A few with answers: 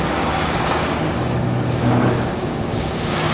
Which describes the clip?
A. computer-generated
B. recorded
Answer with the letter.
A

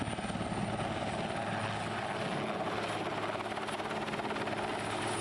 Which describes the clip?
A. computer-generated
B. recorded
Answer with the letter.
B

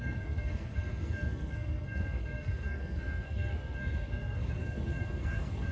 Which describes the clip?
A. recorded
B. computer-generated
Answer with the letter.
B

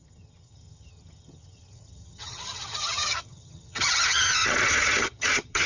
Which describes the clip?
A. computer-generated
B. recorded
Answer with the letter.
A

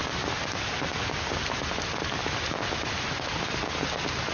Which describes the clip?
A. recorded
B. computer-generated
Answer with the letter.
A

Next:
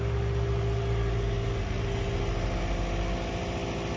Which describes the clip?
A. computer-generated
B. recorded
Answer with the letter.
B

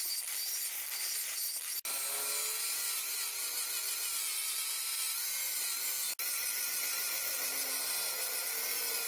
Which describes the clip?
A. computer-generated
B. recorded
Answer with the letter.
B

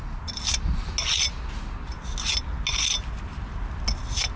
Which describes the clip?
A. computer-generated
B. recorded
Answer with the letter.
B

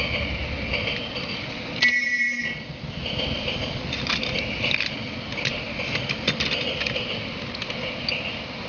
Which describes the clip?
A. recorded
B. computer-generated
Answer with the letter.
A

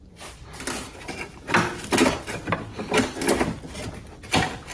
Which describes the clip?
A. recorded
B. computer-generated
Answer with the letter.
A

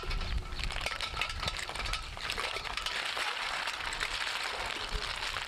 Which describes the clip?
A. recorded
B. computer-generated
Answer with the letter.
A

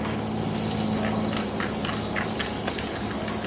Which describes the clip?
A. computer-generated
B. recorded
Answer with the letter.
B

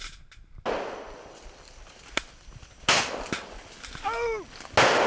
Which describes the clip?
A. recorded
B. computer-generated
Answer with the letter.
A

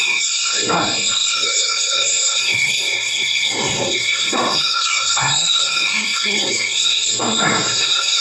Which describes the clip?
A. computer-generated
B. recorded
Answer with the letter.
A